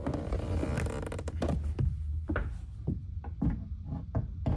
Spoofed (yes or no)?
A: no